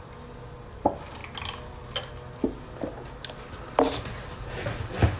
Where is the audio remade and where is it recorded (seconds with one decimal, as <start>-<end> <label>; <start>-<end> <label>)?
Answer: 0.0-5.2 recorded